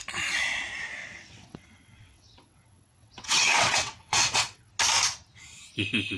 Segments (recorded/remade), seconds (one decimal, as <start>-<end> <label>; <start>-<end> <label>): 0.0-1.0 recorded; 1.0-4.7 remade; 4.7-6.2 recorded